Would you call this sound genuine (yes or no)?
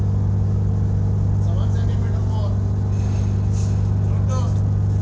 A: yes